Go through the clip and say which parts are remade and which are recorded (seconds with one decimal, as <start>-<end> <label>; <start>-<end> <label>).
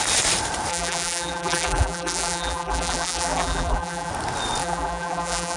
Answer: 0.0-0.7 recorded; 0.7-4.1 remade; 4.1-4.6 recorded; 4.6-5.6 remade